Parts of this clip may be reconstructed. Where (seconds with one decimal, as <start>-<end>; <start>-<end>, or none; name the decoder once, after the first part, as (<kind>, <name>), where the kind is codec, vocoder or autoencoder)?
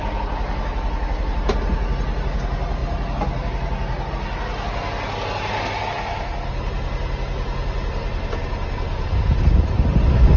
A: none